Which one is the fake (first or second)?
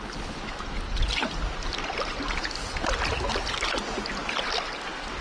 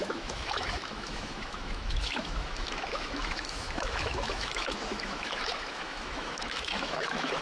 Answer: second